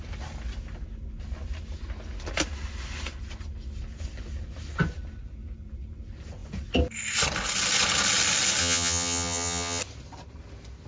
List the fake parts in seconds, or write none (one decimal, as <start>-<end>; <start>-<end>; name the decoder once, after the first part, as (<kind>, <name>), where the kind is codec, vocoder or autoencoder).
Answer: 8.6-9.8 (vocoder, HiFi-GAN)